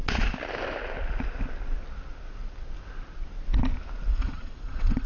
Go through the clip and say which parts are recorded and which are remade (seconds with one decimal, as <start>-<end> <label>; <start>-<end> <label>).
0.0-4.1 recorded; 4.1-5.1 remade